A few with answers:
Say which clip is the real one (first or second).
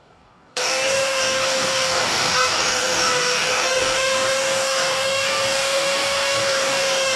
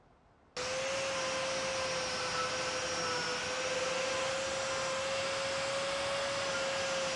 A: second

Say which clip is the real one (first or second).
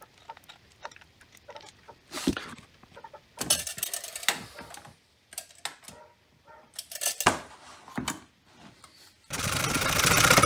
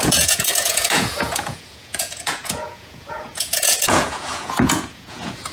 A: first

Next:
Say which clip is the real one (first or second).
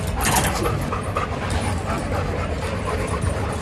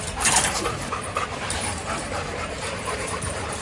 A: first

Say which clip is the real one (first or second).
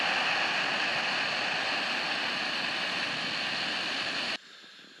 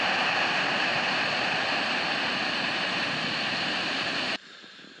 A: first